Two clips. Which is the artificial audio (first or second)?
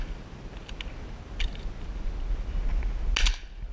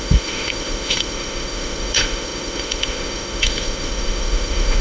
second